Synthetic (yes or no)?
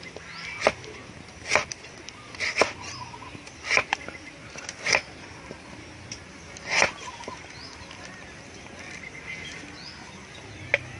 no